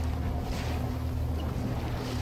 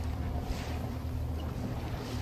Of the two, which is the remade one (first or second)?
second